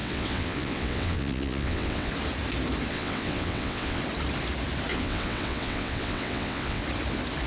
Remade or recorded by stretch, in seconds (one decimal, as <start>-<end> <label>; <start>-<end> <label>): 0.0-2.1 remade; 2.1-2.9 recorded; 2.9-4.0 remade; 4.0-4.9 recorded; 4.9-6.8 remade; 6.8-7.5 recorded